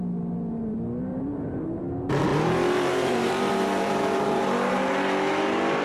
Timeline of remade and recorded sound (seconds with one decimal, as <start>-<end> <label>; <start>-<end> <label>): 0.0-1.1 recorded; 1.1-1.8 remade; 1.8-2.3 recorded; 2.3-4.4 remade; 4.4-5.8 recorded